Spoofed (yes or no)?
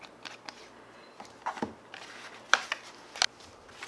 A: no